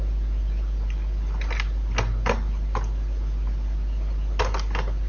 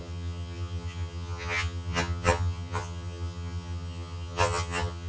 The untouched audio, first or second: first